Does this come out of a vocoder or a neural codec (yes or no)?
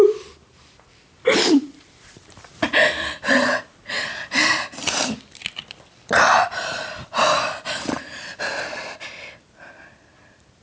yes